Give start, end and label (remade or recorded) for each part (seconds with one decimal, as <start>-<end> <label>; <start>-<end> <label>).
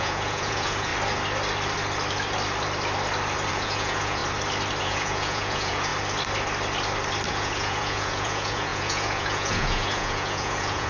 0.0-0.9 remade; 0.9-3.5 recorded; 3.5-4.2 remade; 4.2-4.8 recorded; 4.8-5.9 remade; 5.9-7.3 recorded; 7.3-10.9 remade